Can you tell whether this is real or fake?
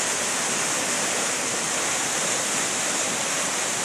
real